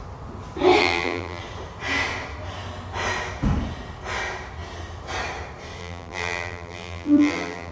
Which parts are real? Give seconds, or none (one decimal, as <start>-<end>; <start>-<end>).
0.0-0.8; 1.4-5.8